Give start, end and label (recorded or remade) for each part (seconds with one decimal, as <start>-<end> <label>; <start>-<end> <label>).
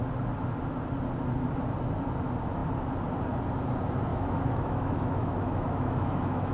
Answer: 0.0-4.1 recorded; 4.1-6.5 remade